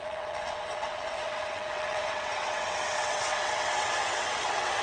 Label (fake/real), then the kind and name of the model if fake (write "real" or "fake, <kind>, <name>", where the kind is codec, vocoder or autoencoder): fake, vocoder, WaveNeXt